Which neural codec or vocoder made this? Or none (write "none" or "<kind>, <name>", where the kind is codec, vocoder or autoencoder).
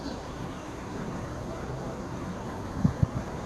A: codec, SNAC